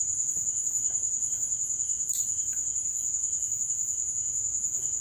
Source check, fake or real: fake